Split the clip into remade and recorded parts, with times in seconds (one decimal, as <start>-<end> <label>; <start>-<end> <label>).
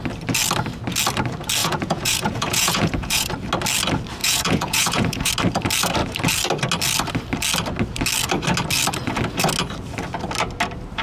0.0-1.6 recorded; 1.6-3.3 remade; 3.3-4.2 recorded; 4.2-5.3 remade; 5.3-11.0 recorded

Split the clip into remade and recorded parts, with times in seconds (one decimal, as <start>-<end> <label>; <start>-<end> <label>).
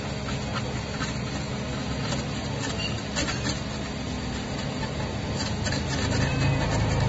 0.0-7.1 recorded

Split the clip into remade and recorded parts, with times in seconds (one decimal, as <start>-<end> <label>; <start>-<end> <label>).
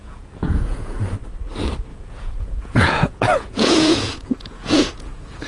0.0-1.0 remade; 1.0-1.9 recorded; 1.9-5.5 remade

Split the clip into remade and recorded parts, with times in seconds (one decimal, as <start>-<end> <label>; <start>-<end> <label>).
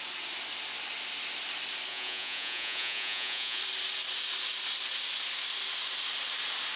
0.0-1.9 recorded; 1.9-3.6 remade; 3.6-6.8 recorded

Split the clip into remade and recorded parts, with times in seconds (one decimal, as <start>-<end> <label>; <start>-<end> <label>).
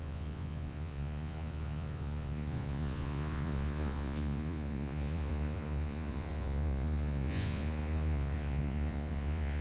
0.0-9.6 remade